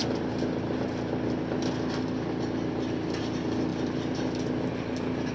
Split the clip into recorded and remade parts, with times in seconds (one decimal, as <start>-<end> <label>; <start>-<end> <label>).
0.0-5.3 recorded